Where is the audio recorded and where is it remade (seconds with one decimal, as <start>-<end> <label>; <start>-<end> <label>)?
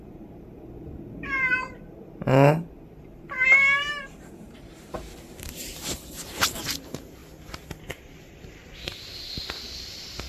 0.0-7.2 remade; 7.2-8.3 recorded; 8.3-9.1 remade; 9.1-10.3 recorded